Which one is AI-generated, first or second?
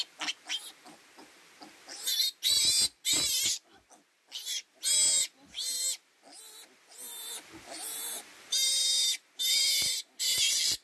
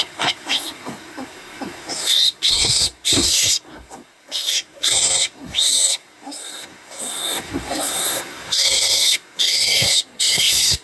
second